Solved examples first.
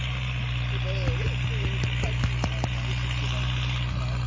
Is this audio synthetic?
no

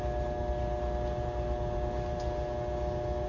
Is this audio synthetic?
no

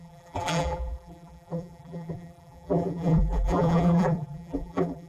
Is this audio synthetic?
yes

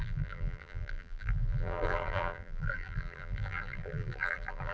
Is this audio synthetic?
yes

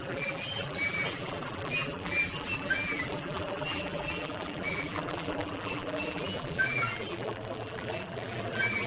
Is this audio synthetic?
yes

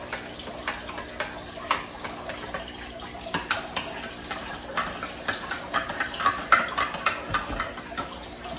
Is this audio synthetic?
no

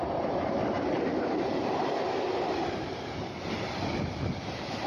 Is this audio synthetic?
yes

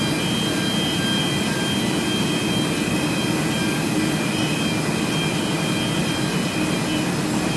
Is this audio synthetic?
no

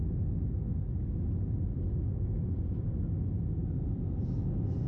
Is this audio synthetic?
no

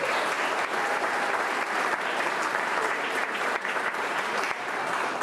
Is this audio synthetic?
yes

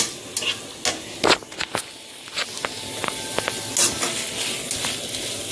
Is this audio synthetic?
no